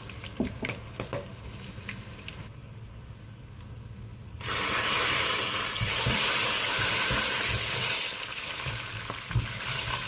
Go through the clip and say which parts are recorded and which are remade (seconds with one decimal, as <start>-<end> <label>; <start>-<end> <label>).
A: 0.0-4.1 recorded; 4.1-8.9 remade; 8.9-10.1 recorded